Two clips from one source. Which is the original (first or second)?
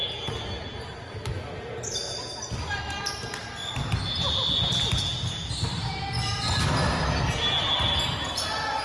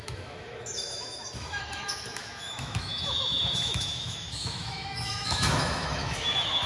first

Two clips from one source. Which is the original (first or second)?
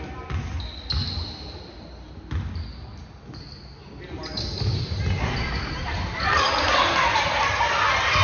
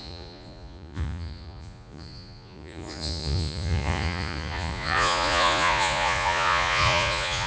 first